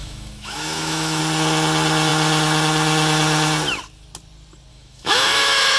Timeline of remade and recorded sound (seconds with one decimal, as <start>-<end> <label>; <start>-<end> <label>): 0.0-1.2 remade; 1.2-4.7 recorded; 4.7-5.8 remade